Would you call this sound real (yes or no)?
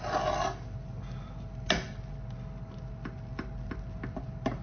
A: yes